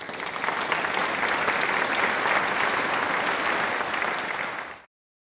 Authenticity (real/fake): real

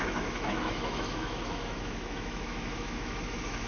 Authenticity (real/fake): fake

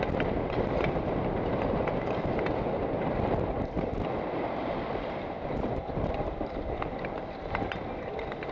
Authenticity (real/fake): real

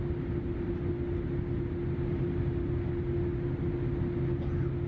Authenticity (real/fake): real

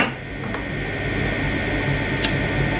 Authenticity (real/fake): real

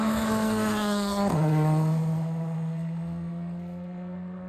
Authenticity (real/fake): fake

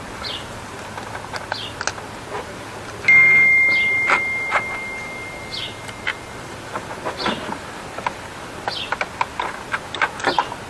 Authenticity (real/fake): real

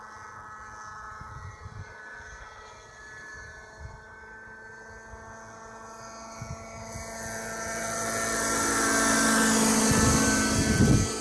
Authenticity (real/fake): real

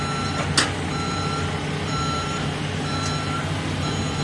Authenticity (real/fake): real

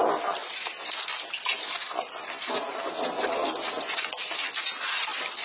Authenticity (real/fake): real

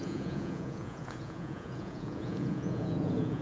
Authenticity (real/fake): fake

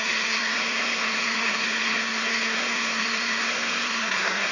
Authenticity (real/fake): fake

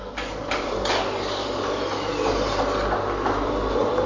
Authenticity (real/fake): real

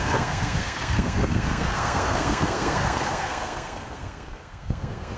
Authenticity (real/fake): fake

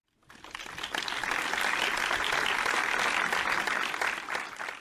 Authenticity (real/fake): real